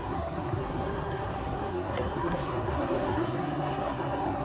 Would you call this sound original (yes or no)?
no